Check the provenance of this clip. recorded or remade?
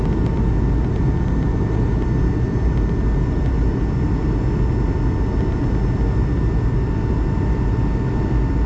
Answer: recorded